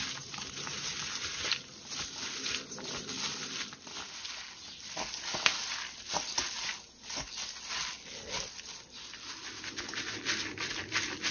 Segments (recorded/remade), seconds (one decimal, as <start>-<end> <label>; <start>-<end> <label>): 0.0-11.3 recorded